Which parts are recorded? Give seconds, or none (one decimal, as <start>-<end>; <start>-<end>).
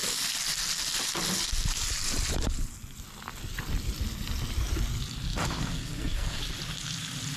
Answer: 0.0-5.3; 6.4-7.4